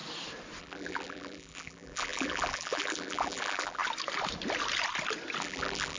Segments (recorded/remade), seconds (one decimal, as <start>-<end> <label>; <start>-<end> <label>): 0.0-0.6 recorded; 0.6-3.8 remade; 3.8-5.4 recorded; 5.4-6.0 remade